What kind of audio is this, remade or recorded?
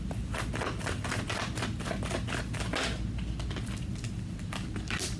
recorded